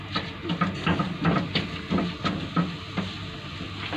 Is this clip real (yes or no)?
yes